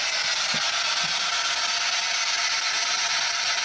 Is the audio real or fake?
real